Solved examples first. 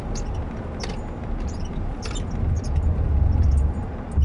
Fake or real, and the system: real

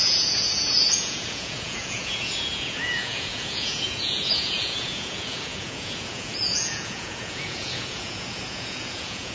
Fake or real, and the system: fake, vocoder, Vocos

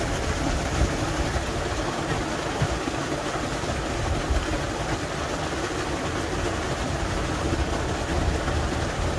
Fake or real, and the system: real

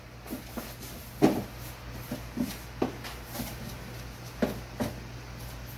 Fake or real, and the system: real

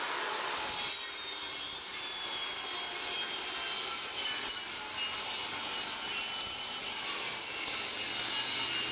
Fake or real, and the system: real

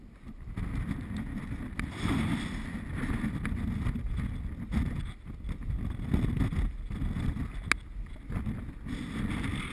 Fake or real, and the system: real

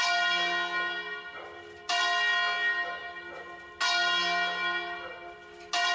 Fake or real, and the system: real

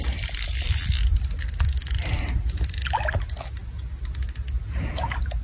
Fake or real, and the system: real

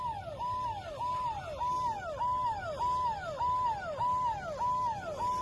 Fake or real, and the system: real